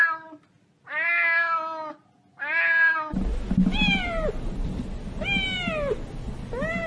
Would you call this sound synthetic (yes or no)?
no